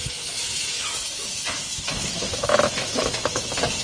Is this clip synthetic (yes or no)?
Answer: yes